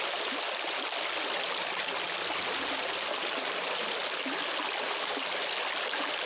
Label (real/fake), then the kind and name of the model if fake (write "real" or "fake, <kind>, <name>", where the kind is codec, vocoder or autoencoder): real